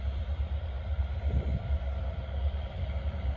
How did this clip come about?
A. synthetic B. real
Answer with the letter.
A